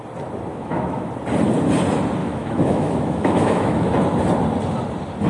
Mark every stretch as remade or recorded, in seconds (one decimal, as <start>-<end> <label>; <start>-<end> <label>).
0.0-0.5 recorded; 0.5-1.1 remade; 1.1-2.2 recorded; 2.2-3.9 remade; 3.9-5.3 recorded